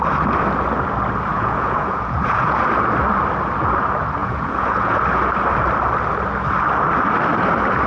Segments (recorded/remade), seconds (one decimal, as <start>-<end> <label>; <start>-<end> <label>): 0.0-1.3 recorded; 1.3-2.6 remade; 2.6-4.2 recorded; 4.2-5.0 remade; 5.0-7.9 recorded